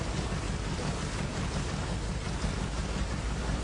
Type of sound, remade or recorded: recorded